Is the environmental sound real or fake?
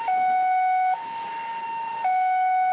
fake